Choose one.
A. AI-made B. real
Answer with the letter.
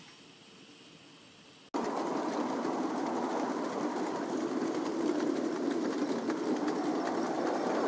B